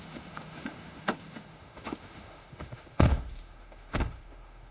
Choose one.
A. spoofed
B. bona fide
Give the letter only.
A